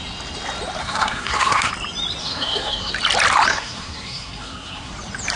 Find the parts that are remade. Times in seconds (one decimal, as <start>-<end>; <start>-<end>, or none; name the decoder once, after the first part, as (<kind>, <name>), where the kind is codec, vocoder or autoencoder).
0.8-1.7 (codec, SNAC); 2.2-2.9; 3.5-4.9